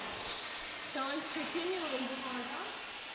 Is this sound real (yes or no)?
yes